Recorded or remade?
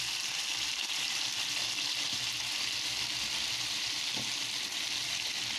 recorded